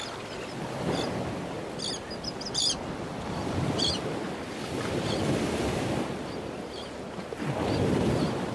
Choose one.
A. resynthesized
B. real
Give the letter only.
B